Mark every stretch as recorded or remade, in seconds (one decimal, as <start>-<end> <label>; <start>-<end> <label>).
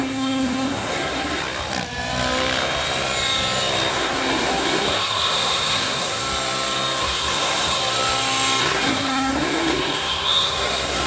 0.0-1.4 remade; 1.4-3.9 recorded; 3.9-6.2 remade; 6.2-7.0 recorded; 7.0-7.8 remade; 7.8-8.6 recorded; 8.6-11.1 remade